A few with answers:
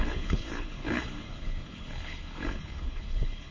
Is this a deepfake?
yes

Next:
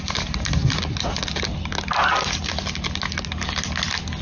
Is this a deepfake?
no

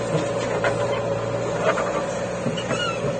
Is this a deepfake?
no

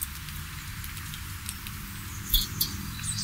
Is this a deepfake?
no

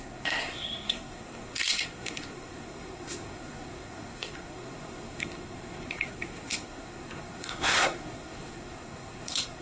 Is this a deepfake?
yes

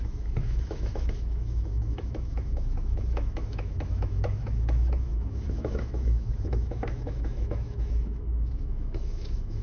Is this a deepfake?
yes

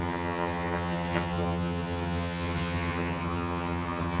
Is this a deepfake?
yes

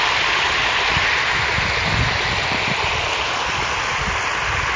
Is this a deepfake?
no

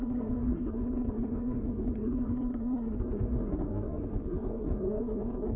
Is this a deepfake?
yes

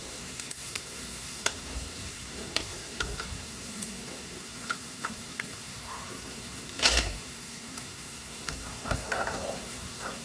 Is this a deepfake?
yes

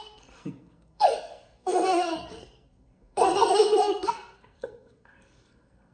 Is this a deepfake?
yes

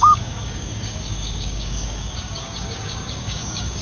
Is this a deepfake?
yes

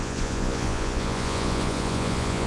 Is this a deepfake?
yes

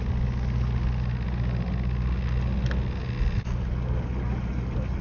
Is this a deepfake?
no